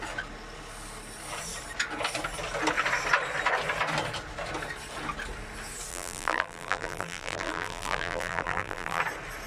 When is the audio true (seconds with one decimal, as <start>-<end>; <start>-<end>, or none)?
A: 0.0-5.9; 9.0-9.5